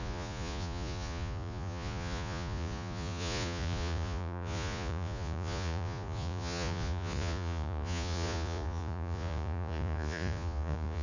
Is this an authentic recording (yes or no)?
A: no